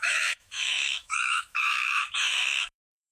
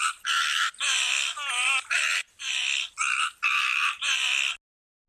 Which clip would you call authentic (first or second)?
second